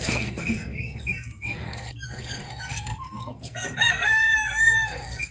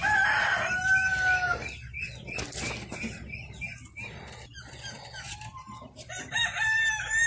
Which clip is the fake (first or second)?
first